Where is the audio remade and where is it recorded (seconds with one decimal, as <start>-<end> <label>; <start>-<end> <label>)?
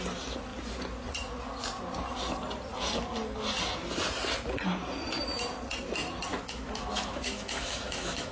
0.0-6.3 recorded; 6.3-8.3 remade